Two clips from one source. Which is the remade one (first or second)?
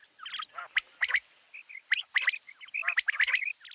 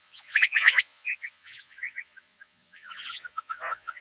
second